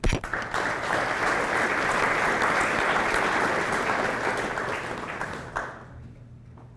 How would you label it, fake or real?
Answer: real